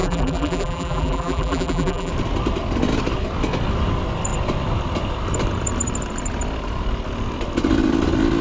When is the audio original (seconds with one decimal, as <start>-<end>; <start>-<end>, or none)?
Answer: 2.1-8.4